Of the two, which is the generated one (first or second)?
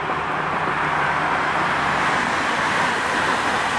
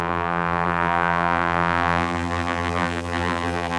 second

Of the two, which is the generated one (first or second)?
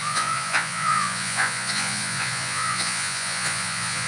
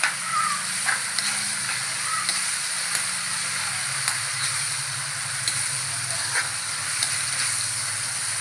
first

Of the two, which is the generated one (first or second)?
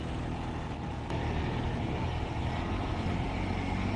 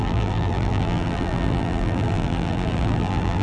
second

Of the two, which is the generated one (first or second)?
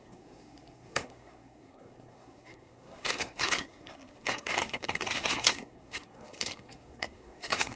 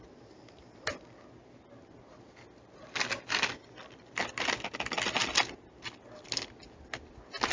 first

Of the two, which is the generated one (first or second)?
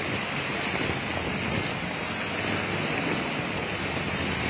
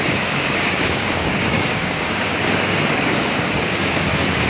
second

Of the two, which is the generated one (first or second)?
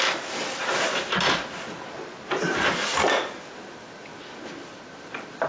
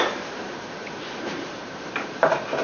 second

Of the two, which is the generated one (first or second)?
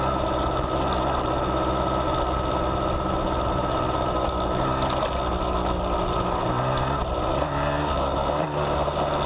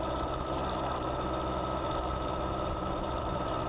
second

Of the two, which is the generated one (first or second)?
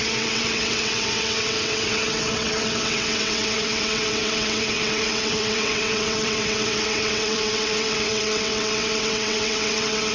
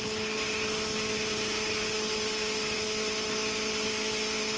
first